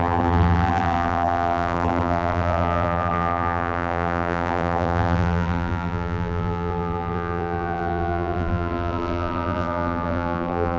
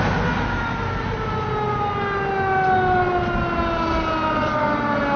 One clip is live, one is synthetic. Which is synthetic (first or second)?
first